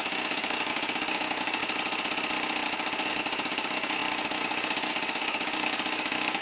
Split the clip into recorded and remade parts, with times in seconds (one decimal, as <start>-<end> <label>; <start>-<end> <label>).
0.0-1.6 remade; 1.6-3.1 recorded; 3.1-6.4 remade